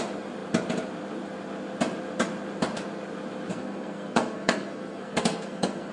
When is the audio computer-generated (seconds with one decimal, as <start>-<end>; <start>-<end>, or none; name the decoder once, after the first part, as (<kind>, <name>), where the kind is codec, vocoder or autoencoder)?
3.5-5.9 (codec, SNAC)